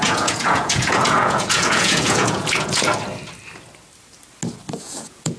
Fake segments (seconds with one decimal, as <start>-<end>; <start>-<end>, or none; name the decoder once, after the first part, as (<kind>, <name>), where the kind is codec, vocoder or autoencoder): 0.0-2.9 (vocoder, Vocos); 4.8-5.4